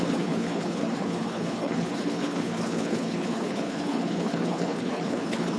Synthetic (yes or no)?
yes